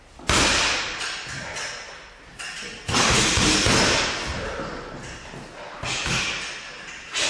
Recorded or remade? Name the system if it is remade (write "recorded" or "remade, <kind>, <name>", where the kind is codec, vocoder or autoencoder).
recorded